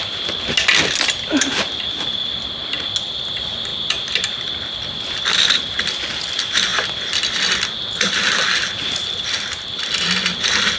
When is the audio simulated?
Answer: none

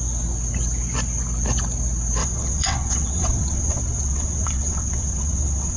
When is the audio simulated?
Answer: 2.2-5.8 (vocoder, WaveNeXt)

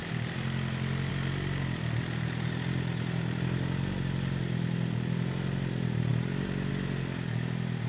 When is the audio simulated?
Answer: none